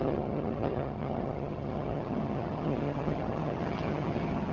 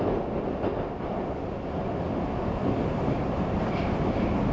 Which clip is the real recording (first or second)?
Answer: second